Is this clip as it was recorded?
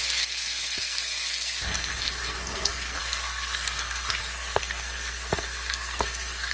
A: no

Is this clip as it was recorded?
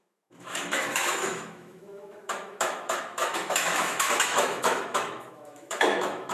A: no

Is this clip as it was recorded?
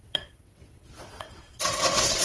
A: no